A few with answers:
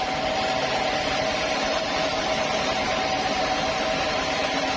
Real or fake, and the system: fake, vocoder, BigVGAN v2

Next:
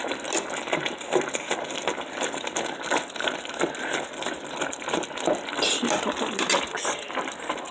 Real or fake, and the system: real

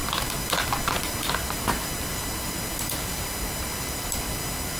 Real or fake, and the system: fake, vocoder, BigVGAN v2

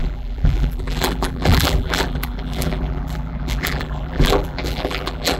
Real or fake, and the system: fake, vocoder, BigVGAN v2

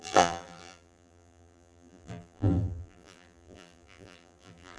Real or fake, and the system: fake, vocoder, BigVGAN v2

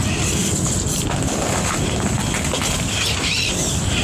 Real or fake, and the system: fake, vocoder, BigVGAN v2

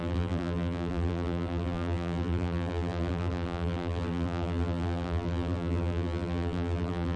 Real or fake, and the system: fake, vocoder, BigVGAN v2